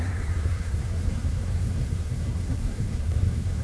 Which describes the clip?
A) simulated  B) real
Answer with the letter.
A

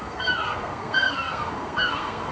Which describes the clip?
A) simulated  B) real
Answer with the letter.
A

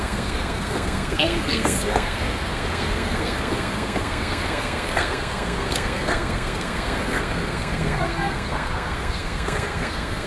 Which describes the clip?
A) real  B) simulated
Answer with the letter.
B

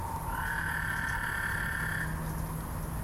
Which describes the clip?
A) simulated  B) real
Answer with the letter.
B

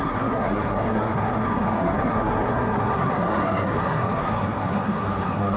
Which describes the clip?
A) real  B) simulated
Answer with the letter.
B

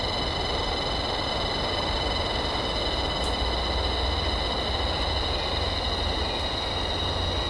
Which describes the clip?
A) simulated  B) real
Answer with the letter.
B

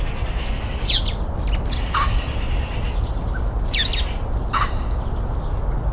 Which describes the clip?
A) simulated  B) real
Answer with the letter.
B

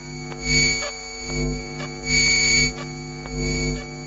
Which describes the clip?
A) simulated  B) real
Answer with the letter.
B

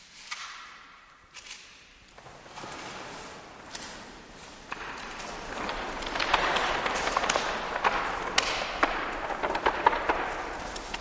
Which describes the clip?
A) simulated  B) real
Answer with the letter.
B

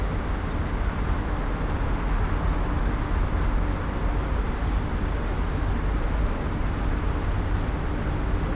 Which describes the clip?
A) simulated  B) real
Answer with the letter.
B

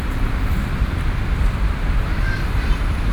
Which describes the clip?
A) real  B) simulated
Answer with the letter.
B